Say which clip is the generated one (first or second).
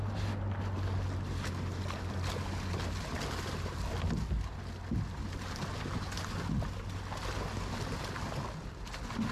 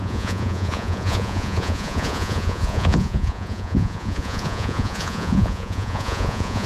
second